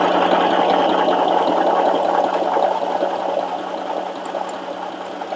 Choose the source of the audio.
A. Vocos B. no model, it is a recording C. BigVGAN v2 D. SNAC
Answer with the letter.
B